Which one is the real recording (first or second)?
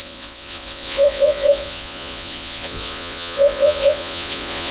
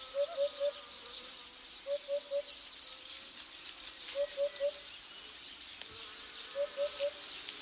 second